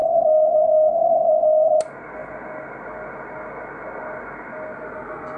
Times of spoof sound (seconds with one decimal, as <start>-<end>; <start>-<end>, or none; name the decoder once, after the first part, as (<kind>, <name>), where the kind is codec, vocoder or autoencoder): none